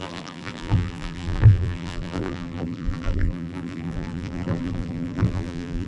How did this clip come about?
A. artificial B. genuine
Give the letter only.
A